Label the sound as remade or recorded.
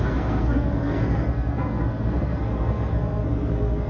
remade